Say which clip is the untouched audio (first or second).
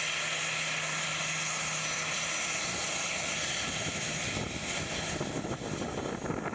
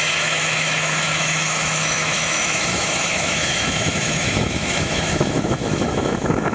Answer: first